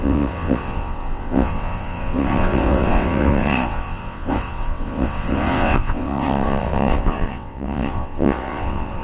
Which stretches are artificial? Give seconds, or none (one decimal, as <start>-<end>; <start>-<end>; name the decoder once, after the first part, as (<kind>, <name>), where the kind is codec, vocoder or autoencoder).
0.0-9.0 (vocoder, WaveNeXt)